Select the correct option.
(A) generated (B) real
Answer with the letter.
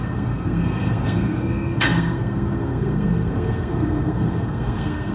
A